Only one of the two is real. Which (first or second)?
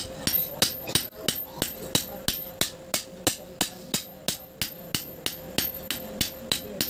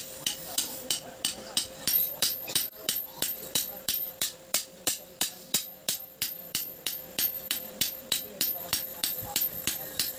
first